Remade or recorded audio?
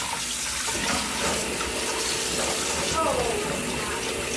recorded